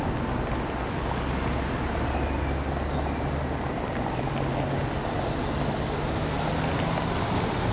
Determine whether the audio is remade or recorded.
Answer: recorded